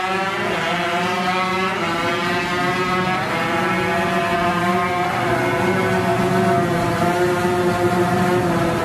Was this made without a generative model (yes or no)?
yes